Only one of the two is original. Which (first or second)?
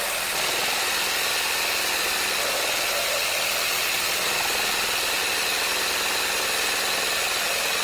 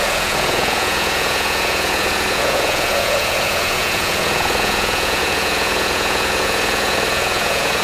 first